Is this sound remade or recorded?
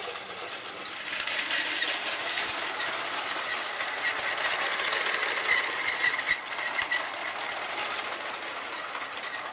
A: recorded